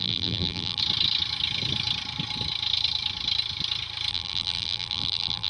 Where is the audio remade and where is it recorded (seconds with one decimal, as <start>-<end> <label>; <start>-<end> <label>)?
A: 0.0-0.8 remade; 0.8-4.1 recorded; 4.1-5.5 remade